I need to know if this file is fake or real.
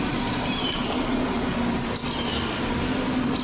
real